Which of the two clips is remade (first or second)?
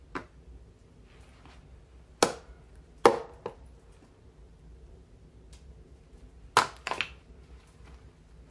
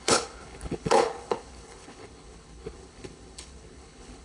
second